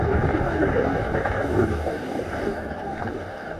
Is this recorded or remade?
remade